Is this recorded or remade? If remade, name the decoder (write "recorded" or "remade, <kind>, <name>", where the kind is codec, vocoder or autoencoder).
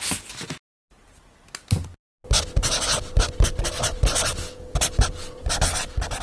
recorded